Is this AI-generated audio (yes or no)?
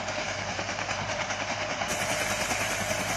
no